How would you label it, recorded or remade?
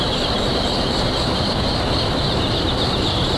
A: remade